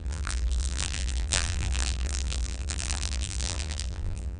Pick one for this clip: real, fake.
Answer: fake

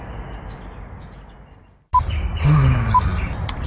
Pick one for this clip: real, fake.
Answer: real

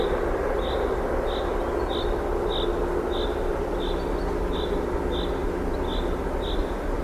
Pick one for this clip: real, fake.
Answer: real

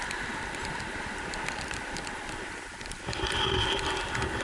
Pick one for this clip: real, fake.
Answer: fake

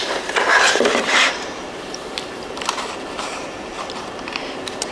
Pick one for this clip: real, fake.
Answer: fake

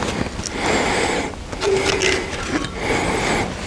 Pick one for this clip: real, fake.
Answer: real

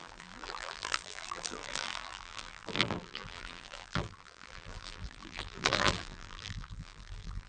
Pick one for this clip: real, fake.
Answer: fake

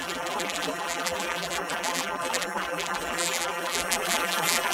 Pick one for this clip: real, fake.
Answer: fake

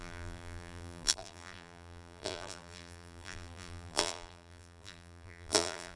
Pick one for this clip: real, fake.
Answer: fake